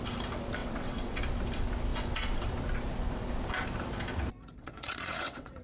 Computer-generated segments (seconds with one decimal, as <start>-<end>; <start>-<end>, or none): 0.6-1.2; 4.6-5.6